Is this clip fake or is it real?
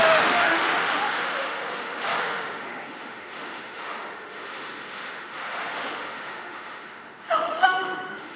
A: fake